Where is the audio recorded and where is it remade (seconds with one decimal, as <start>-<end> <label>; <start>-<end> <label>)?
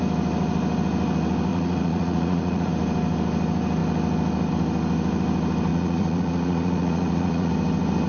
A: 0.0-1.5 recorded; 1.5-2.7 remade; 2.7-5.7 recorded; 5.7-7.5 remade; 7.5-8.1 recorded